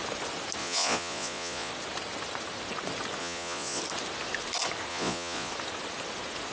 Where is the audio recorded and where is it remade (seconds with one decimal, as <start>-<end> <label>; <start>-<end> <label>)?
0.0-0.6 recorded; 0.6-1.7 remade; 1.7-3.2 recorded; 3.2-3.8 remade; 3.8-4.9 recorded; 4.9-5.5 remade; 5.5-6.5 recorded